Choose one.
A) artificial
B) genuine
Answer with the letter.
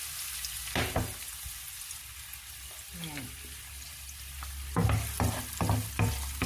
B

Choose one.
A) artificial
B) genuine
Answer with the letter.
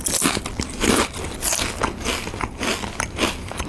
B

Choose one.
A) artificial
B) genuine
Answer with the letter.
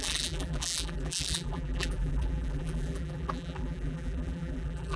A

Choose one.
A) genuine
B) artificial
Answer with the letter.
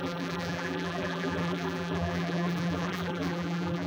B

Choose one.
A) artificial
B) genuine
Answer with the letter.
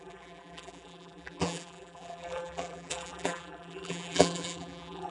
A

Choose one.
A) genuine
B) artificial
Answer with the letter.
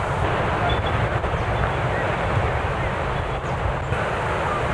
A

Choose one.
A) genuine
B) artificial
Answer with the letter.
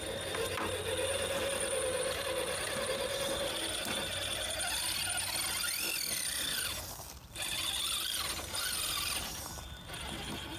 A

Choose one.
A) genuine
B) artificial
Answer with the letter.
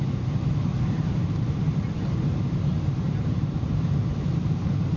B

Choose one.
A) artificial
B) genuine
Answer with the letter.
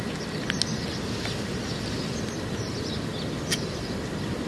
B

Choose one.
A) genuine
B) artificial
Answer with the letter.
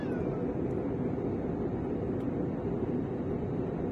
A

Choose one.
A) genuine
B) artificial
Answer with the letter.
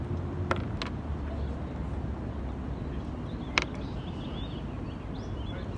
A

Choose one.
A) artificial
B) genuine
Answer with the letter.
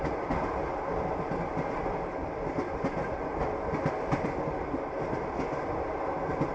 B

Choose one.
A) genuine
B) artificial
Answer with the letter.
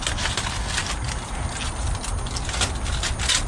A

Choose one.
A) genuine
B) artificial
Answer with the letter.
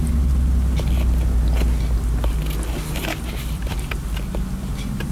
A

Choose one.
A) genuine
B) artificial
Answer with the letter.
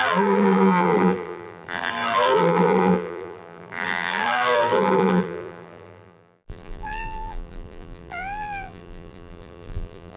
B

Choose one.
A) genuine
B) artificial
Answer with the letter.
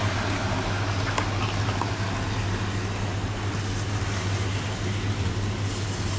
A